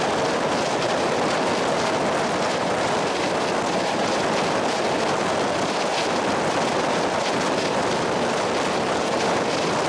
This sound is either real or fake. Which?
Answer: real